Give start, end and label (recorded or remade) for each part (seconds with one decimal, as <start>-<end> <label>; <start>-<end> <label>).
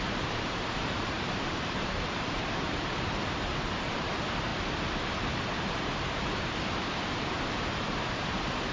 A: 0.0-8.7 remade